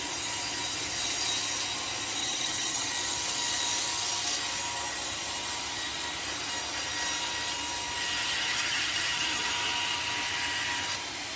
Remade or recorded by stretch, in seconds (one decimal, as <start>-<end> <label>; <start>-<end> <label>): 0.0-2.2 recorded; 2.2-2.9 remade; 2.9-8.2 recorded; 8.2-9.5 remade; 9.5-11.4 recorded